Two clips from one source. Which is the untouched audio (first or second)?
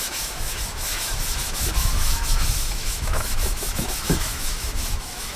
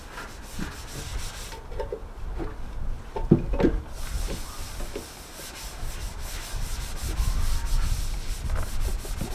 second